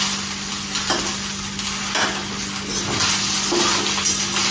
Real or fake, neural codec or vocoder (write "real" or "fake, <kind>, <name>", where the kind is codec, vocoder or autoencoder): real